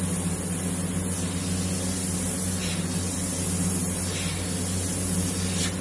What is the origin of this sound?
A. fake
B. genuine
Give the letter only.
B